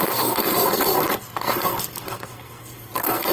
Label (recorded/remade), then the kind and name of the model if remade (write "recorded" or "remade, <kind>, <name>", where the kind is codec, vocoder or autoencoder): remade, codec, SNAC